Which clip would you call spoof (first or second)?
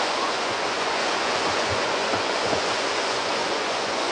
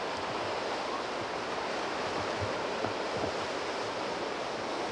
first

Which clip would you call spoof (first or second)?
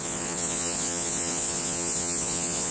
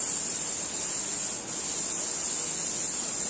first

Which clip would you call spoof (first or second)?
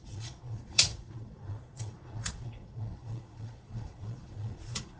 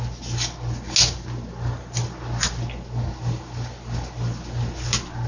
first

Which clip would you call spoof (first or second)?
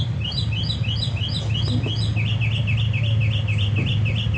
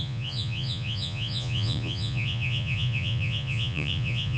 second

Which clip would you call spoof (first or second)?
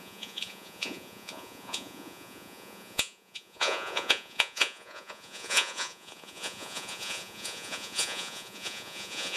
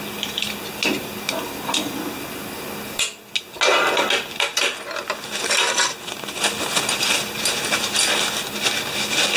first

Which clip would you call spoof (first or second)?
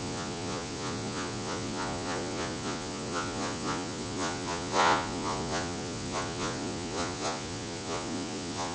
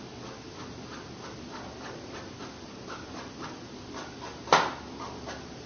first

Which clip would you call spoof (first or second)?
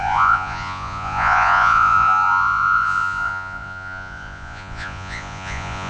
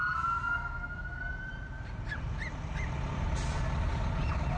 first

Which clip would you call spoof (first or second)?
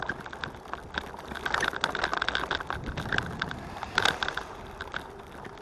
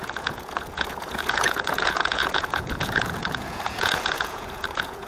second